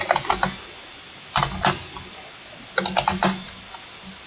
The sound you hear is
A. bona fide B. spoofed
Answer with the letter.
A